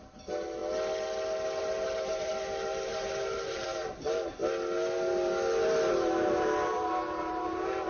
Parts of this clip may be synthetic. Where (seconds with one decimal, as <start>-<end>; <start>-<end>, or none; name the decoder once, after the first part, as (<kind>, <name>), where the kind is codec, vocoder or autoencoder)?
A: 0.0-0.6 (vocoder, BigVGAN v2); 1.6-4.4; 5.9-7.9